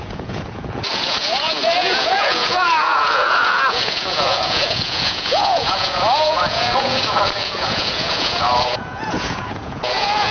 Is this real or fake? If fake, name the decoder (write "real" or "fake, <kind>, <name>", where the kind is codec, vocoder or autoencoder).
fake, vocoder, Vocos